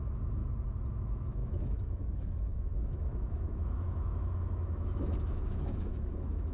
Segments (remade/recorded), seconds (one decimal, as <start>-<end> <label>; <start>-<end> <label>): 0.0-0.4 remade; 0.4-0.9 recorded; 0.9-6.5 remade